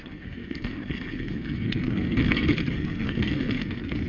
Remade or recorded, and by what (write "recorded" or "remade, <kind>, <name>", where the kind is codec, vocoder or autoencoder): remade, codec, SNAC